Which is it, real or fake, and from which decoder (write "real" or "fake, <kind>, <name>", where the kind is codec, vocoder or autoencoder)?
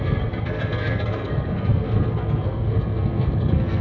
fake, codec, SNAC